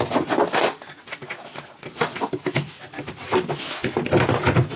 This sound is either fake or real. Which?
real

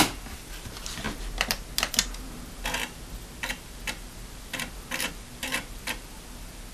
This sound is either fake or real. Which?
real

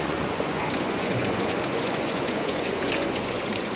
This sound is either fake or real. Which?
fake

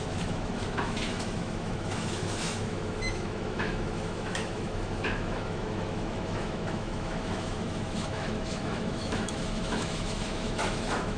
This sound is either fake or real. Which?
fake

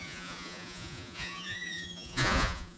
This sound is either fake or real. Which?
fake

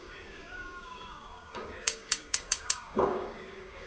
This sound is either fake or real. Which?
fake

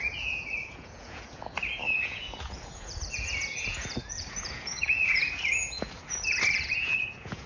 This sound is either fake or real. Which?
fake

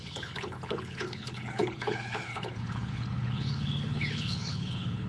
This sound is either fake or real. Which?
fake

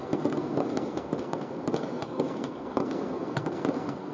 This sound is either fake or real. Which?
fake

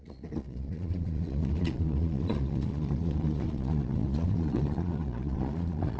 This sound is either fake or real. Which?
fake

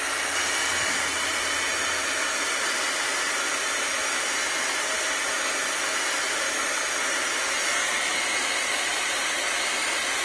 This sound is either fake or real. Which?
real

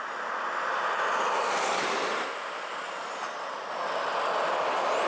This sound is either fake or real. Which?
real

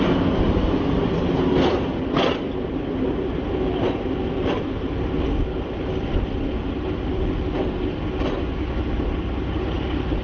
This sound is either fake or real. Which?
real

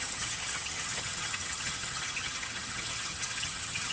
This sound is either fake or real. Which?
fake